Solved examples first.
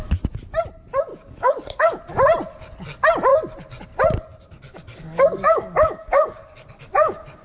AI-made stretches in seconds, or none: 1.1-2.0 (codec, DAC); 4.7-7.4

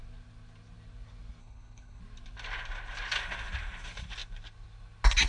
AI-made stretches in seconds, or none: 1.4-2.0 (codec, HILCodec)

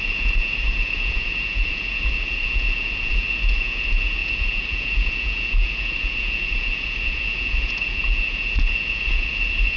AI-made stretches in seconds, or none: 0.0-9.8 (vocoder, Vocos)